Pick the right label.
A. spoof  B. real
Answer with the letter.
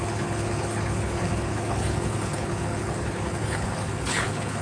A